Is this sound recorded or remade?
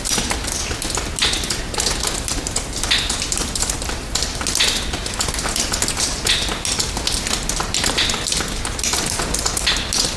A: recorded